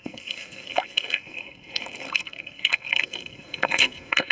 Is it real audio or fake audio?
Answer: fake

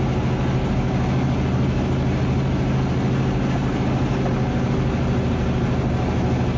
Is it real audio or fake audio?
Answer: real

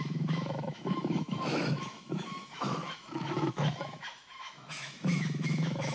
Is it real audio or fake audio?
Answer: fake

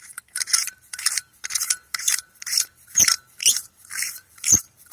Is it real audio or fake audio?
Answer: fake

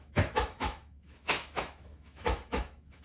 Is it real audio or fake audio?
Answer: fake